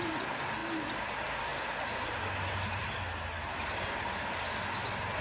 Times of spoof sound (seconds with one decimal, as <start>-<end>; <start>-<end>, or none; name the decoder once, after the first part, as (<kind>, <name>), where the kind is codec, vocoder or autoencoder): none